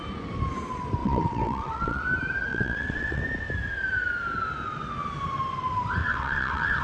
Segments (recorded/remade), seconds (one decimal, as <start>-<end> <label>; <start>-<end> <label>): 0.0-1.0 recorded; 1.0-2.0 remade; 2.0-2.5 recorded; 2.5-3.2 remade; 3.2-6.0 recorded; 6.0-6.8 remade